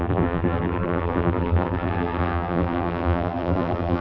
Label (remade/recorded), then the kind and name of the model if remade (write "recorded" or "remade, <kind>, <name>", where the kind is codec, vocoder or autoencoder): remade, vocoder, BigVGAN v2